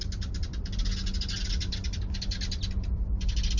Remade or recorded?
recorded